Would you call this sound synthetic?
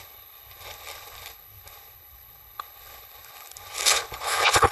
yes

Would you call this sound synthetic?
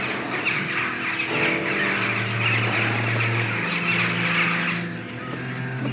no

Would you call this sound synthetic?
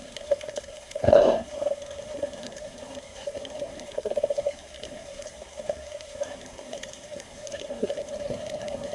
yes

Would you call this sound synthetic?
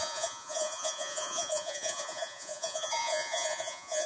yes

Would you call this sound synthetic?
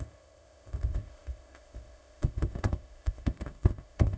yes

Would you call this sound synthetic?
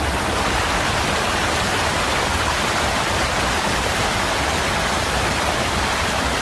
no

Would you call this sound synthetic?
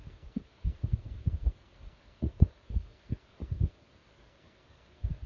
yes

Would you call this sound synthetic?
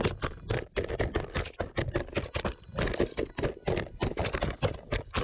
no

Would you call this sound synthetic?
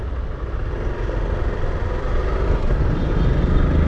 no